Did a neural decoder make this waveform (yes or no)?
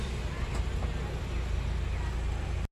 no